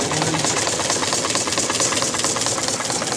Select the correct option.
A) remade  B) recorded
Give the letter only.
B